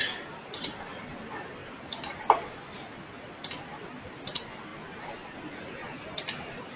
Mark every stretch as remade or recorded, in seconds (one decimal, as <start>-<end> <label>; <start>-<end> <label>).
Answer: 0.0-6.8 recorded